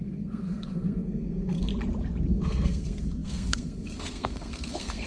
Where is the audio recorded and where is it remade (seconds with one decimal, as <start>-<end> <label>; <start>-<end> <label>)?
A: 0.0-1.7 remade; 1.7-2.3 recorded; 2.3-5.1 remade